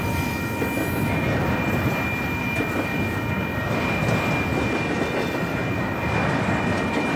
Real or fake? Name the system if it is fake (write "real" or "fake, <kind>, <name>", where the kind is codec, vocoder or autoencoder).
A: real